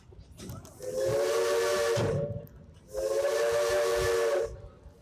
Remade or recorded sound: recorded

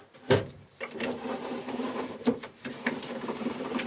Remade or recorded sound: remade